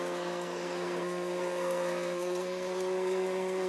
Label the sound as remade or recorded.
remade